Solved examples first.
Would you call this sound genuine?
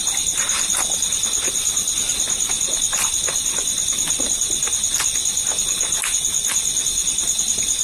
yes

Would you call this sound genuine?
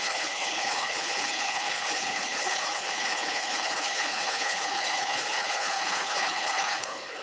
no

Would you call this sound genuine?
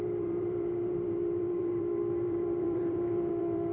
no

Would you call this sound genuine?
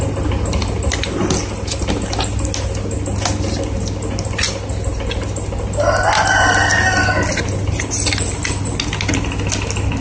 yes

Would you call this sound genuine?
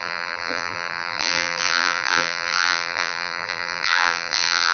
no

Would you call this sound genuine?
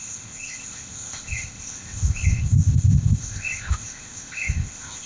no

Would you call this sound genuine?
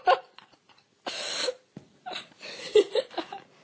no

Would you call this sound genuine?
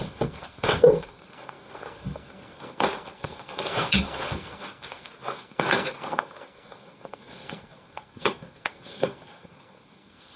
no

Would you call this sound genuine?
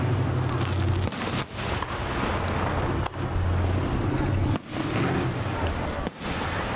yes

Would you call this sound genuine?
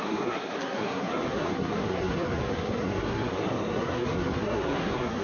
no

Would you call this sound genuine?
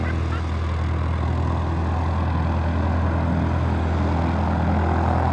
yes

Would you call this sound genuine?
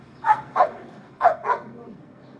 no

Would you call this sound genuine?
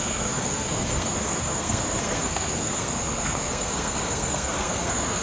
no